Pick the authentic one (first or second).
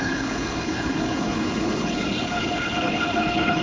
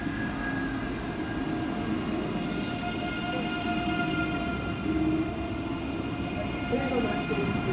second